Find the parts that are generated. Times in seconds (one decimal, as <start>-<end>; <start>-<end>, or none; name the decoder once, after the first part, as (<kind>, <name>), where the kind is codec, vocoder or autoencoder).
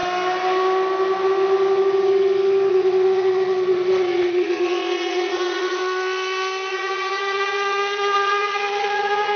2.7-5.8 (vocoder, Vocos); 6.7-9.4